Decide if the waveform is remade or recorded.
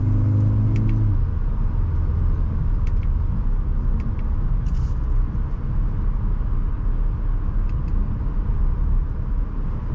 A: recorded